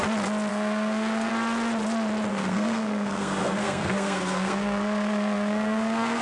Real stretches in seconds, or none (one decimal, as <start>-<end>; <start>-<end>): 0.0-0.5; 1.3-2.3